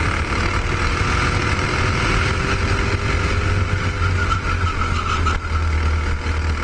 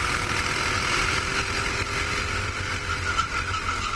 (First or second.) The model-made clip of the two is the second